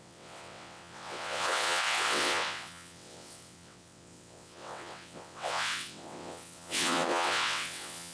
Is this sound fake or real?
fake